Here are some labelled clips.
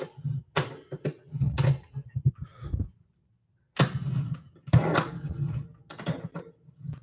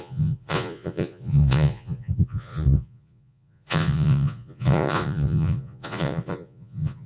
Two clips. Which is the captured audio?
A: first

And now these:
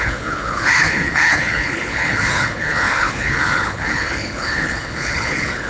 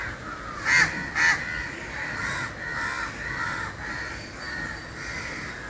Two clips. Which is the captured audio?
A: second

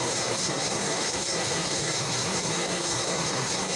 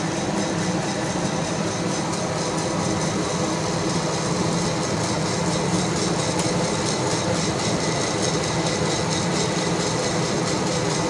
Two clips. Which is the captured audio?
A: second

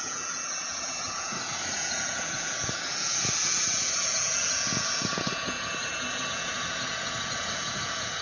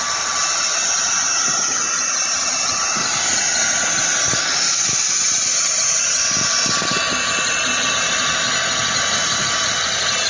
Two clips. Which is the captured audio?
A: second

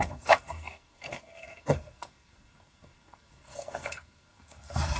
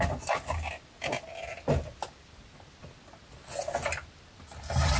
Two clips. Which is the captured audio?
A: second